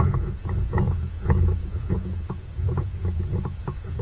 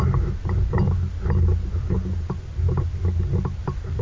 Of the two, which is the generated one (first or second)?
first